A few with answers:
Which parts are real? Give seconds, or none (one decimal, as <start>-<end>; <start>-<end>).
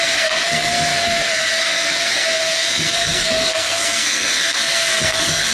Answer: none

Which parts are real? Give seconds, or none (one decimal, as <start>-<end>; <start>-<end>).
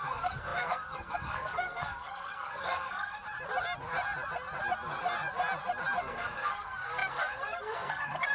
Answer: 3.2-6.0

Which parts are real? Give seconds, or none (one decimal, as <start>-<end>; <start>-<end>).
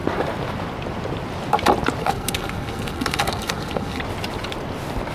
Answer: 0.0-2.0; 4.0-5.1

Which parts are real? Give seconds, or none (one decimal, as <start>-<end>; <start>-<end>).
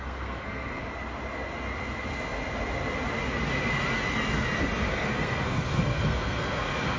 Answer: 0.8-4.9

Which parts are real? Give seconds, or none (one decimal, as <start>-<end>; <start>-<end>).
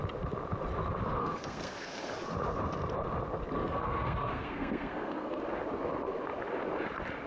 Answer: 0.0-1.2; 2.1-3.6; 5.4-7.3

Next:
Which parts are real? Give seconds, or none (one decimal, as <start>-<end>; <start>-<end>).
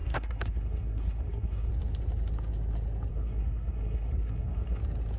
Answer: 1.7-3.1; 4.8-5.2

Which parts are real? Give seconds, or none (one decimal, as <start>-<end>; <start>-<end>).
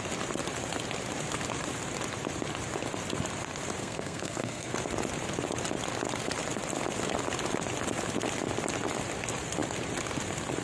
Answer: 0.0-3.8; 4.7-10.6